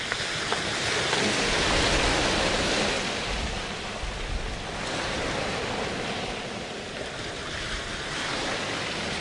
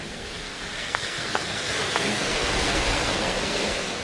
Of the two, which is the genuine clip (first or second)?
first